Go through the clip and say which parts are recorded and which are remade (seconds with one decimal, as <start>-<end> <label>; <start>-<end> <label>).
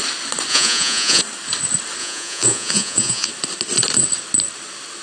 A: 0.0-0.5 recorded; 0.5-1.2 remade; 1.2-2.0 recorded; 2.0-3.3 remade; 3.3-5.0 recorded